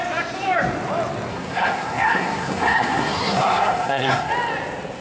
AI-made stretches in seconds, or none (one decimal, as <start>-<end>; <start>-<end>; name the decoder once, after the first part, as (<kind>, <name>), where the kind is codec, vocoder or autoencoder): 1.3-4.3 (codec, SNAC)